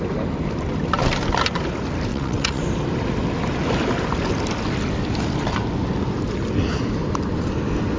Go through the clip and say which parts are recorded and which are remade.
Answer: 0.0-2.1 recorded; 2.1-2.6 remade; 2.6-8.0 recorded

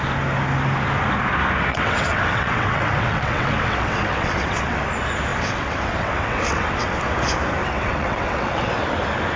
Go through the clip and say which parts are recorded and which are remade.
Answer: 0.0-1.7 recorded; 1.7-4.8 remade; 4.8-5.3 recorded; 5.3-7.0 remade; 7.0-7.6 recorded; 7.6-8.8 remade; 8.8-9.4 recorded